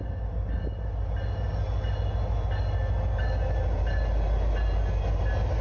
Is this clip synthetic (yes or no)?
no